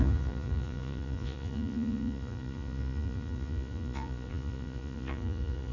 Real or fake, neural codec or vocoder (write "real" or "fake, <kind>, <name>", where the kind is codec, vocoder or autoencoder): fake, vocoder, Vocos